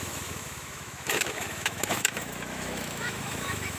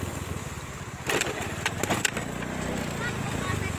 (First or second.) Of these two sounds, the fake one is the first